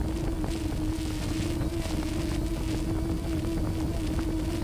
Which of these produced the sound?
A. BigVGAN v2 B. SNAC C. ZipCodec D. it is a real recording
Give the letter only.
D